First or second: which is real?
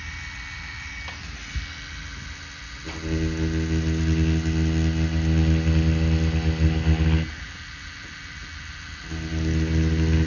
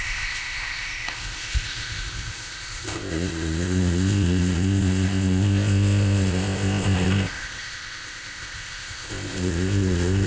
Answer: first